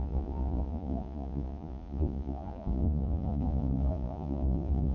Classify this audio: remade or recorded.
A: remade